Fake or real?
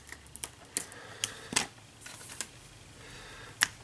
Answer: real